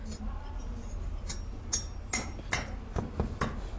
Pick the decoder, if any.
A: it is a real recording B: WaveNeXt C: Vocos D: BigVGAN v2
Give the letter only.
A